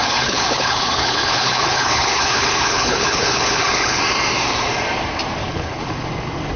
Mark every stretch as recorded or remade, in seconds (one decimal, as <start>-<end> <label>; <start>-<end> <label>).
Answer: 0.0-4.0 remade; 4.0-5.4 recorded; 5.4-5.9 remade; 5.9-6.6 recorded